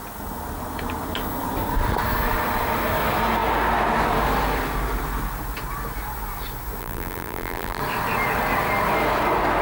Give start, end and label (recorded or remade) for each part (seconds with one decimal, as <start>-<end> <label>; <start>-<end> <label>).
0.0-6.8 recorded; 6.8-7.8 remade; 7.8-9.6 recorded